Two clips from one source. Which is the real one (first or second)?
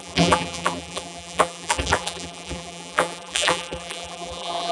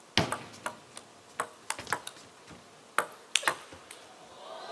second